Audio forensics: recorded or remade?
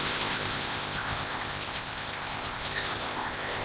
remade